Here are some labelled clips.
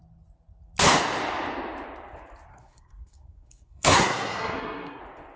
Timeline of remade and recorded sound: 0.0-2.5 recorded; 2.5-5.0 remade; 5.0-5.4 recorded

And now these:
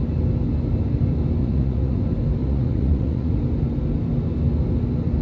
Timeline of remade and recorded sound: 0.0-1.4 recorded; 1.4-2.0 remade; 2.0-2.4 recorded; 2.4-3.4 remade; 3.4-5.2 recorded

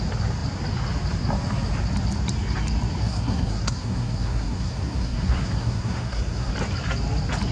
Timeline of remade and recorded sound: 0.0-3.0 recorded; 3.0-6.5 remade; 6.5-7.5 recorded

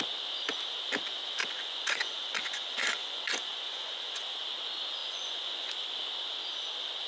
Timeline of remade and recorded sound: 0.0-1.4 recorded; 1.4-4.2 remade; 4.2-5.0 recorded; 5.0-5.7 remade; 5.7-7.1 recorded

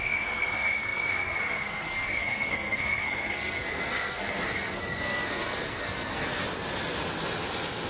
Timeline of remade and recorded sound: 0.0-6.4 remade; 6.4-7.9 recorded

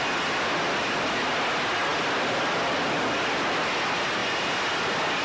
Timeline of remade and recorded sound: 0.0-5.2 recorded

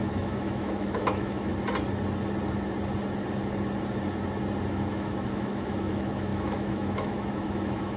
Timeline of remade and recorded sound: 0.0-1.5 remade; 1.5-4.7 recorded; 4.7-8.0 remade